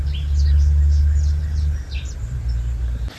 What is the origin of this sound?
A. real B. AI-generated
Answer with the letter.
A